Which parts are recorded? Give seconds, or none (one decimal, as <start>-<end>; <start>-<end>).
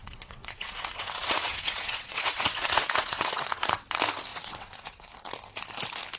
3.7-4.3; 5.1-6.2